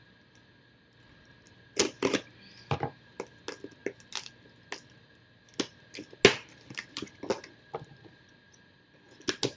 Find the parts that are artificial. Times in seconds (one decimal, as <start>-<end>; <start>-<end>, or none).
none